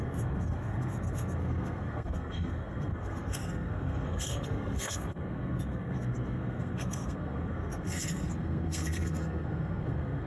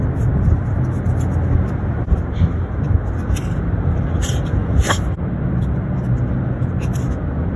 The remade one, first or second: first